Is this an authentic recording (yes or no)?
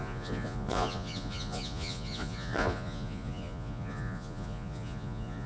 no